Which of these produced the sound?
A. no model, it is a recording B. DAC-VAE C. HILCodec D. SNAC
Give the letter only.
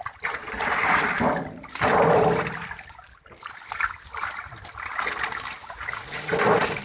A